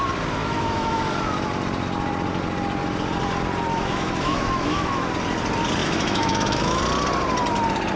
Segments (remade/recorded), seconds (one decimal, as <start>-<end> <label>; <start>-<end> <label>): 0.0-0.4 recorded; 0.4-1.0 remade; 1.0-3.7 recorded; 3.7-5.1 remade; 5.1-5.8 recorded; 5.8-6.8 remade; 6.8-8.0 recorded